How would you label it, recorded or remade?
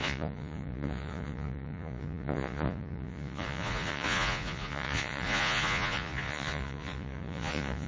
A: remade